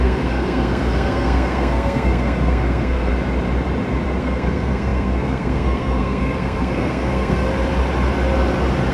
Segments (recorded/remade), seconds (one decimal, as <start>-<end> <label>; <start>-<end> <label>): 0.0-3.1 remade; 3.1-4.2 recorded; 4.2-7.5 remade; 7.5-8.9 recorded